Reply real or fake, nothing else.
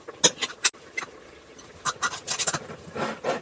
real